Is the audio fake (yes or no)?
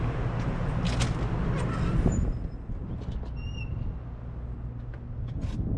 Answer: no